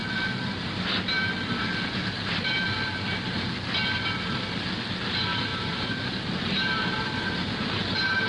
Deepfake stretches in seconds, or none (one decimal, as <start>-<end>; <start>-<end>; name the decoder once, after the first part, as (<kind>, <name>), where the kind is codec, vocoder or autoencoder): 5.5-6.2 (vocoder, BigVGAN v2)